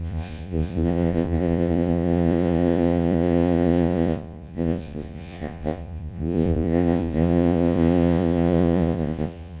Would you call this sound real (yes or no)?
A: no